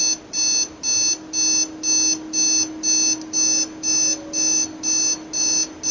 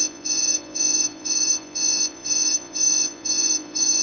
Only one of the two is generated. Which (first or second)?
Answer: second